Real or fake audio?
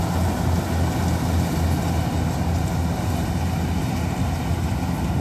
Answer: real